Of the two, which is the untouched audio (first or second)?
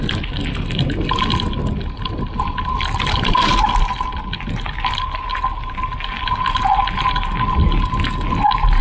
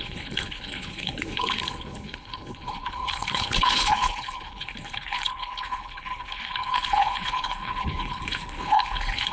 first